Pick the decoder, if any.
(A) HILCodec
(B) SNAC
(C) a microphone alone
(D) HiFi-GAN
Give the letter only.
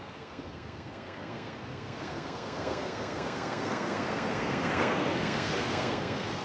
B